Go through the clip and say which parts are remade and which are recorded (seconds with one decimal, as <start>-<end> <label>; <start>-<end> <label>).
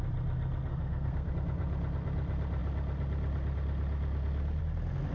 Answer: 0.0-0.7 recorded; 0.7-1.3 remade; 1.3-5.1 recorded